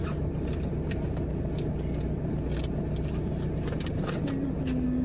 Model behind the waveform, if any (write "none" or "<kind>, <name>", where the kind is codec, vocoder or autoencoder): none